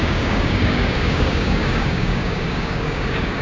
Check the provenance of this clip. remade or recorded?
remade